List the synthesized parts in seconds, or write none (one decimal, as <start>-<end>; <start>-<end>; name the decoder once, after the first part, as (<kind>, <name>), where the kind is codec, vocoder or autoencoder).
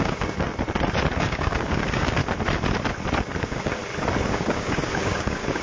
0.0-0.5 (codec, DAC); 1.2-2.2; 3.4-3.8; 4.3-5.6